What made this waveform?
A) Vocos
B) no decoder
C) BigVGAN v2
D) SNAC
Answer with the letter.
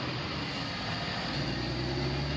B